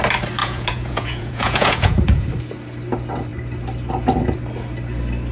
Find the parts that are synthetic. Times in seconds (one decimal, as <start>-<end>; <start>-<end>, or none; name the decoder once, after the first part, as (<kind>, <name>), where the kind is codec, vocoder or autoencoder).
0.4-2.3 (vocoder, Vocos)